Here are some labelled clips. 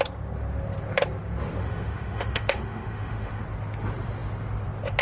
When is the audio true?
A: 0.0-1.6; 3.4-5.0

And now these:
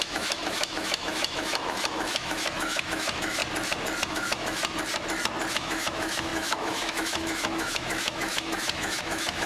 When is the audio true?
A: 3.4-4.1; 4.6-5.5

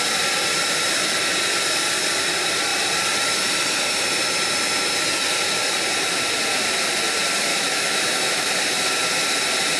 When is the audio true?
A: 0.0-7.5; 8.5-9.8

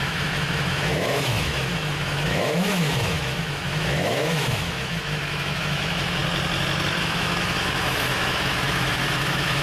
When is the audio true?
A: 6.2-7.0